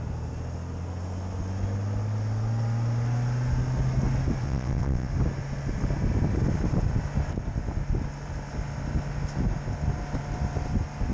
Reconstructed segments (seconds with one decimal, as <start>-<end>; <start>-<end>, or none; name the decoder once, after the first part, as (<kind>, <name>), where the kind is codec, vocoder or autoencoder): 4.4-5.1 (vocoder, WaveNeXt)